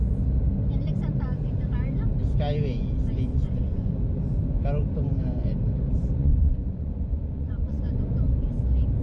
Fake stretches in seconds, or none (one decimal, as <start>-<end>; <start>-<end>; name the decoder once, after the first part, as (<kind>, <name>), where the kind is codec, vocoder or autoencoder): 3.3-3.9 (vocoder, Vocos); 6.2-8.1